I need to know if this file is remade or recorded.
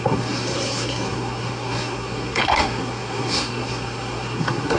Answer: remade